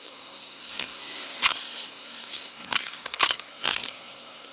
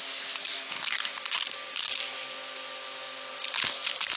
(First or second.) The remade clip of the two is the first